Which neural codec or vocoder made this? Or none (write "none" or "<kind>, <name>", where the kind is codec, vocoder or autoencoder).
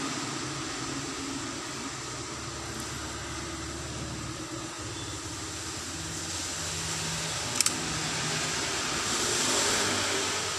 none